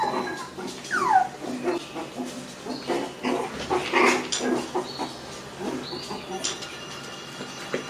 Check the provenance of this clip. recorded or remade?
recorded